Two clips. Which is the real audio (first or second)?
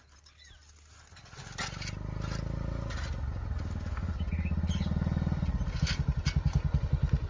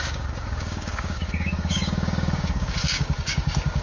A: first